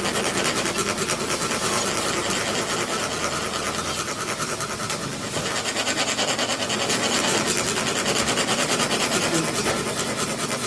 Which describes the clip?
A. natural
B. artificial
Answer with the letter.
A